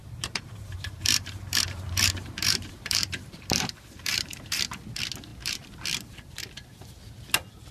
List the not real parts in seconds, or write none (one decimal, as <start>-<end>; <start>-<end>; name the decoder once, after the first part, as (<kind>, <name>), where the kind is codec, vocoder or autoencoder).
0.0-4.6 (vocoder, BigVGAN v2); 5.3-5.8